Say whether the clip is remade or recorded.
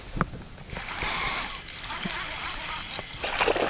recorded